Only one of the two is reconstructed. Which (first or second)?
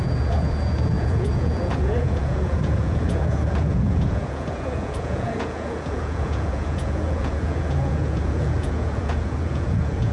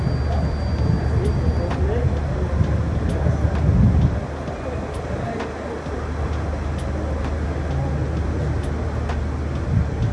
first